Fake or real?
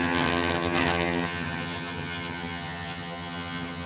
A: fake